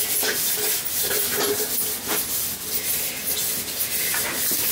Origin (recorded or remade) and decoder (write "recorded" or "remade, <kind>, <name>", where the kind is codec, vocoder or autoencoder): recorded